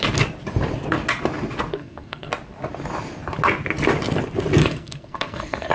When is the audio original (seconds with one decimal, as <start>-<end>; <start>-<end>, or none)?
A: 0.0-1.7; 2.3-4.6